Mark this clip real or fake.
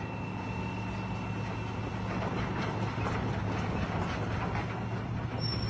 real